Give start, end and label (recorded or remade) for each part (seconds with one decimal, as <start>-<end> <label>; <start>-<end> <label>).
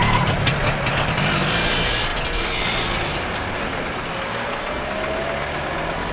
0.0-4.3 recorded; 4.3-4.8 remade; 4.8-6.1 recorded